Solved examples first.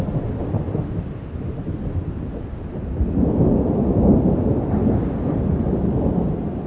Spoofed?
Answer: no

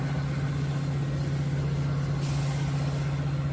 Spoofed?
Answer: no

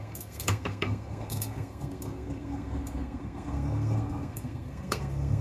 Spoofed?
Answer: yes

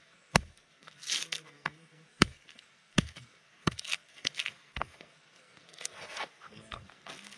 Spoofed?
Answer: yes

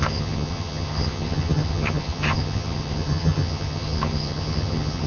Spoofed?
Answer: yes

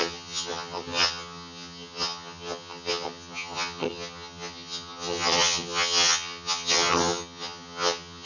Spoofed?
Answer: yes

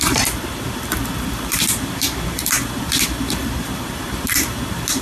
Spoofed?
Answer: yes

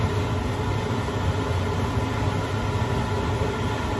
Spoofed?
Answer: no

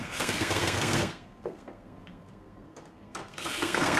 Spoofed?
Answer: yes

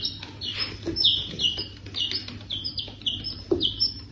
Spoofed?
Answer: no